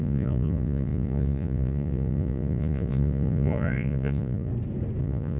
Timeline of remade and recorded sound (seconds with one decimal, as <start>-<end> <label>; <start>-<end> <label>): 0.0-4.5 remade; 4.5-5.0 recorded; 5.0-5.4 remade